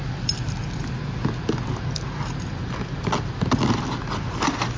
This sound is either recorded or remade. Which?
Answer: recorded